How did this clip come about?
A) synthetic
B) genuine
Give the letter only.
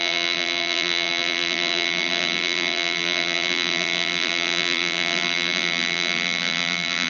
A